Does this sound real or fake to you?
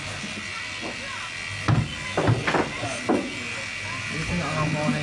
real